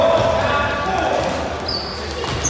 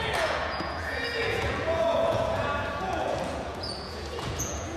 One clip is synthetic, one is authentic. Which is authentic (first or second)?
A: first